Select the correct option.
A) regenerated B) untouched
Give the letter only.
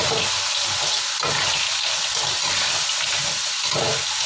B